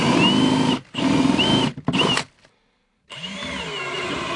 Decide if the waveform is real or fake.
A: real